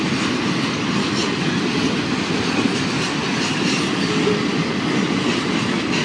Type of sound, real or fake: real